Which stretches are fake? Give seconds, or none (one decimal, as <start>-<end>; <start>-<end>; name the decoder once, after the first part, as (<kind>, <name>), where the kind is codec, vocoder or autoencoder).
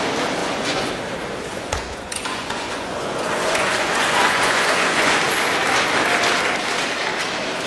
0.4-0.9 (vocoder, Vocos); 1.5-5.2